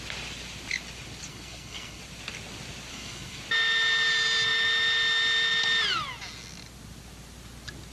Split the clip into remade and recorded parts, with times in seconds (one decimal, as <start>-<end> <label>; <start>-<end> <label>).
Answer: 0.0-1.3 recorded; 1.3-2.0 remade; 2.0-2.9 recorded; 2.9-3.4 remade; 3.4-7.9 recorded